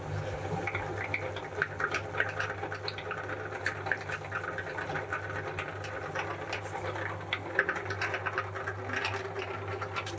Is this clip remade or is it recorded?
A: recorded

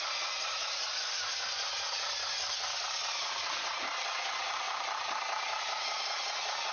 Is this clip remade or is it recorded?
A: recorded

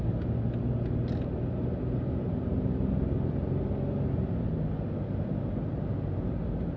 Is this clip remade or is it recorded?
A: recorded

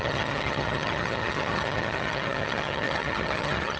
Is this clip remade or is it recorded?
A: remade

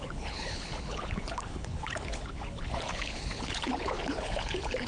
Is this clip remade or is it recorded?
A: remade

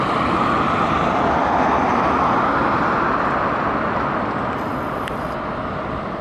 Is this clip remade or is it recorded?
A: recorded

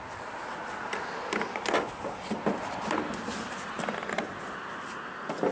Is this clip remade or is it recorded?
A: recorded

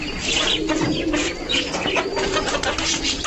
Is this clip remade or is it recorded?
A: recorded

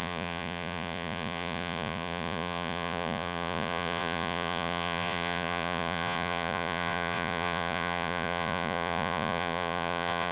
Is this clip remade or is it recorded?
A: remade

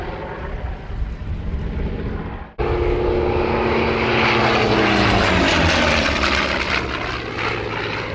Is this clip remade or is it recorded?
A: recorded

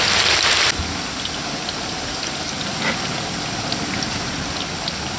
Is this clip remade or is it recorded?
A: recorded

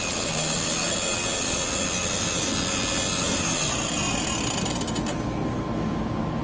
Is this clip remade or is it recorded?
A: recorded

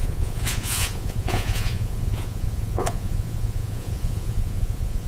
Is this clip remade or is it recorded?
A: remade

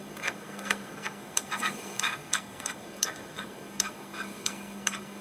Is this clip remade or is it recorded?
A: remade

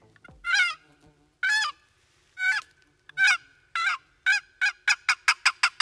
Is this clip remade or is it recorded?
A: recorded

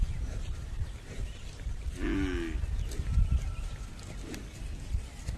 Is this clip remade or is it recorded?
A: recorded